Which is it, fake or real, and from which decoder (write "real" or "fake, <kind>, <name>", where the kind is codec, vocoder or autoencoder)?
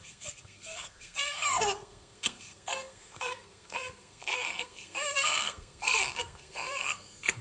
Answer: fake, codec, SNAC